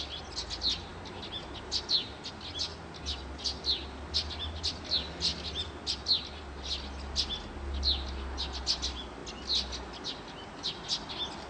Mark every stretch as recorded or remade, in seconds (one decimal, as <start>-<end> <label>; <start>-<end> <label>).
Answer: 0.0-11.5 recorded